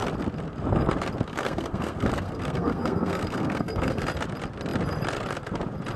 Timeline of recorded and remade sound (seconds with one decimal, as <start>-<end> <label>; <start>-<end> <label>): 0.0-1.3 recorded; 1.3-4.0 remade; 4.0-6.0 recorded